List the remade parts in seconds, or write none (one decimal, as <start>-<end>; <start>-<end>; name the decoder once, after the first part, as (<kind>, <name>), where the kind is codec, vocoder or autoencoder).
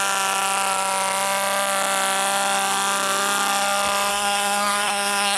4.1-5.4 (codec, SNAC)